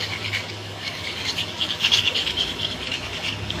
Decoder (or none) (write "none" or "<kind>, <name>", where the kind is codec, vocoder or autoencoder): codec, DAC